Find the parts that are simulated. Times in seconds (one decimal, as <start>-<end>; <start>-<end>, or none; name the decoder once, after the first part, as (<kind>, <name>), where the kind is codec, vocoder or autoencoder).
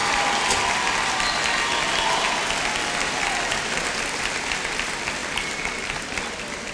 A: none